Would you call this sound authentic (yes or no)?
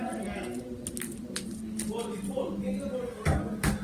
yes